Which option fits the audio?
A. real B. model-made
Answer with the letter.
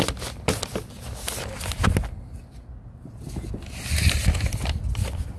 A